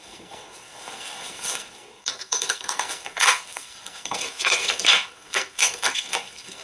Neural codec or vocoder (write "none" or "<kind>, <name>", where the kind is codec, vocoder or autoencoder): codec, SNAC